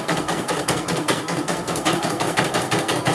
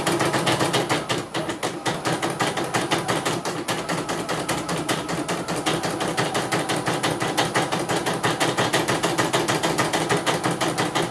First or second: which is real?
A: second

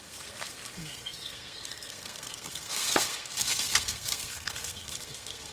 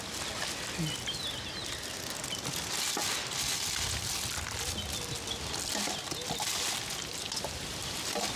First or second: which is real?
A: second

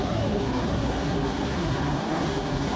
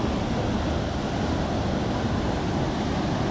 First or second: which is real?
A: second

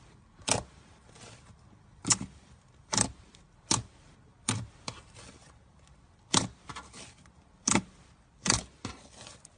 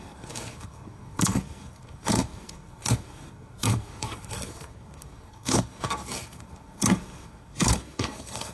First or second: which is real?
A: first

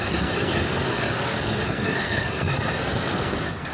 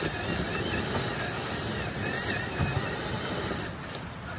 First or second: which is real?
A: second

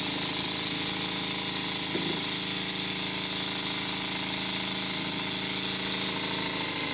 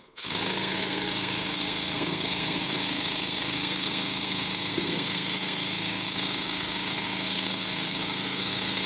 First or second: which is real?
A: first